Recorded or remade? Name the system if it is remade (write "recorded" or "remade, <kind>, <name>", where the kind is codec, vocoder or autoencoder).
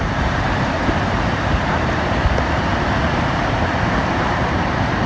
remade, vocoder, BigVGAN v2